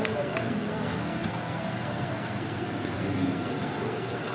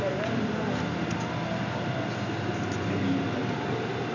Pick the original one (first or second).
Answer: second